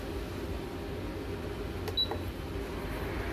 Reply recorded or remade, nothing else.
recorded